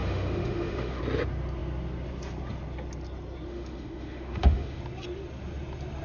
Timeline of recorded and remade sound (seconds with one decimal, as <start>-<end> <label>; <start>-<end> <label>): 0.0-1.0 remade; 1.0-3.5 recorded; 3.5-4.8 remade; 4.8-6.0 recorded